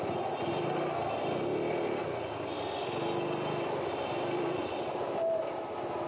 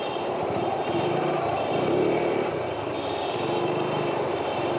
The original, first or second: first